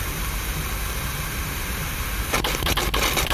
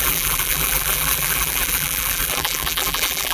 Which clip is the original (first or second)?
first